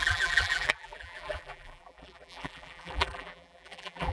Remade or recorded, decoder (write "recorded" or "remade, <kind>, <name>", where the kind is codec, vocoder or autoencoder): remade, vocoder, BigVGAN v2